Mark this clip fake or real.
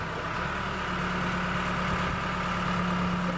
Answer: real